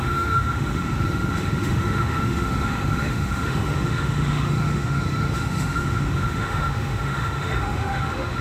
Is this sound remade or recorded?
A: remade